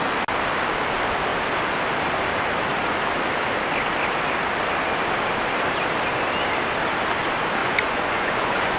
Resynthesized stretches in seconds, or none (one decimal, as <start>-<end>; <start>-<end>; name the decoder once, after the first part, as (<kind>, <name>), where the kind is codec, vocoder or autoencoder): 7.6-8.8 (vocoder, Vocos)